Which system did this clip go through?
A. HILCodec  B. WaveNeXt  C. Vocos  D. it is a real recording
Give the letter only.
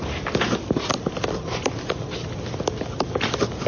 D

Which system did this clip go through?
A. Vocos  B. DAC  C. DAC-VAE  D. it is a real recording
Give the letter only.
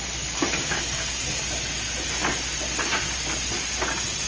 D